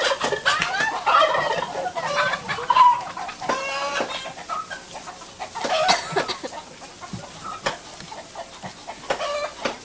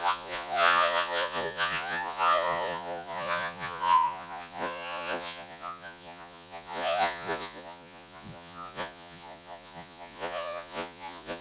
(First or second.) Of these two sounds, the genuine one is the first